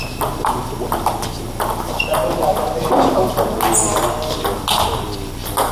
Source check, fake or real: real